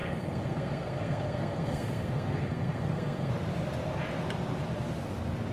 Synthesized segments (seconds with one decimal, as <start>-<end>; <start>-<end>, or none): 0.0-3.3